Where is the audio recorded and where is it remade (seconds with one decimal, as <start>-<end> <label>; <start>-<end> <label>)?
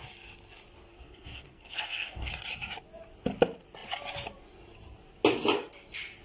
0.0-0.9 recorded; 0.9-2.3 remade; 2.3-6.2 recorded